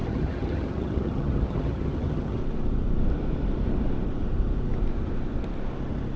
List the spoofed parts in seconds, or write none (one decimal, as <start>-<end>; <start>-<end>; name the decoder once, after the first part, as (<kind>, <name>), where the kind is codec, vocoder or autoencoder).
0.0-2.4 (vocoder, HiFi-GAN)

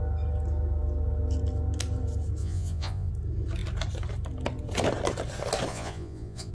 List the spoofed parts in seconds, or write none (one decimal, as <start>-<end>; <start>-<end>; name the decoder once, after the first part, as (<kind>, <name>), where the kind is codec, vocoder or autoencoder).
2.4-3.1 (vocoder, Vocos); 5.7-6.5

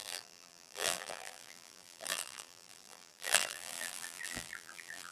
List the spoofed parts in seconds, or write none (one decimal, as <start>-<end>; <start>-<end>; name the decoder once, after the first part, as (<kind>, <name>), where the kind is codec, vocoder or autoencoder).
0.0-5.1 (vocoder, BigVGAN v2)

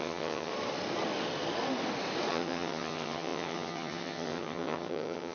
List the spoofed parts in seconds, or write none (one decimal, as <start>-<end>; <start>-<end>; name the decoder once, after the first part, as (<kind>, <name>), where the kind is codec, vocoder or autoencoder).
0.0-0.5 (vocoder, HiFi-GAN); 2.3-5.3